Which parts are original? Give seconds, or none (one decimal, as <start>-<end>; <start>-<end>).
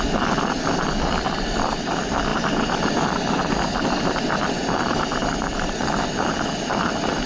0.0-7.3